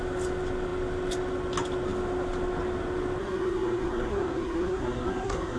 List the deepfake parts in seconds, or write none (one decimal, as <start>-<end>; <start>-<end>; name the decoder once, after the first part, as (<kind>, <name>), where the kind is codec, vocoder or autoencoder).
3.2-5.6 (codec, SNAC)